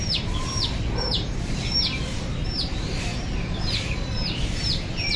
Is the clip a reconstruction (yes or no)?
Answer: yes